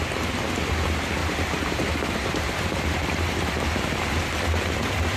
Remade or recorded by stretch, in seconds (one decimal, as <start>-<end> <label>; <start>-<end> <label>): 0.0-1.2 recorded; 1.2-3.9 remade; 3.9-5.2 recorded